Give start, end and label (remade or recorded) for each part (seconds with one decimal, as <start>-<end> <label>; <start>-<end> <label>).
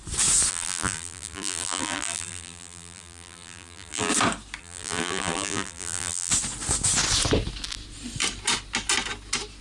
0.0-0.5 recorded; 0.5-4.1 remade; 4.1-4.6 recorded; 4.6-6.3 remade; 6.3-9.6 recorded